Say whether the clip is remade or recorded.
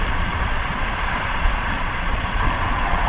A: remade